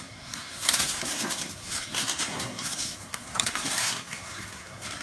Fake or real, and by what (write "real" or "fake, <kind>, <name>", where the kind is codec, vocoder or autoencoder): fake, codec, SNAC